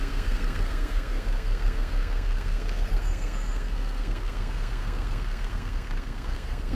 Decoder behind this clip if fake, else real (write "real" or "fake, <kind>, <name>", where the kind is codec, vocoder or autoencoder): fake, codec, SNAC